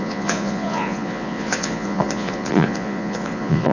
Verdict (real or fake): fake